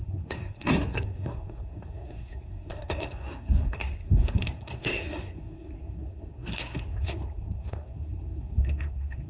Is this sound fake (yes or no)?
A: yes